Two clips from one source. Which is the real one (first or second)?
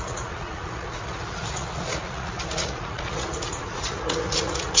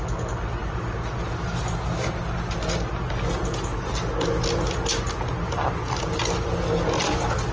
second